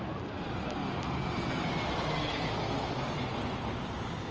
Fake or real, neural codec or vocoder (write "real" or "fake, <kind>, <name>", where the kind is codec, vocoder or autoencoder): real